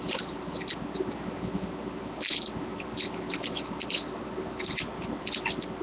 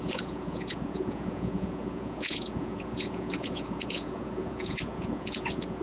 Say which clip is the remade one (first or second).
second